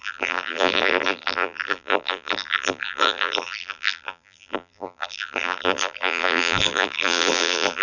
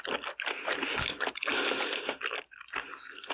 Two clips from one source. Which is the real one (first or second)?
second